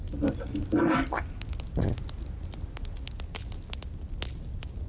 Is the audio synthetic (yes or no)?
no